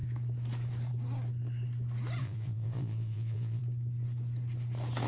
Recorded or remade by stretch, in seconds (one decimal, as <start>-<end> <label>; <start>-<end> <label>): 0.0-2.2 recorded; 2.2-3.6 remade; 3.6-5.1 recorded